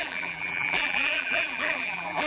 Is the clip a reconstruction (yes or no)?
yes